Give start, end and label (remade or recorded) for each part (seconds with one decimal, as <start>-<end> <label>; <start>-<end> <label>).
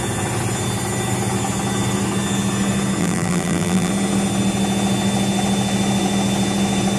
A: 0.0-3.0 recorded; 3.0-3.9 remade; 3.9-7.0 recorded